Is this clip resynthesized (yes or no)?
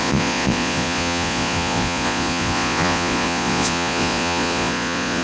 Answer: yes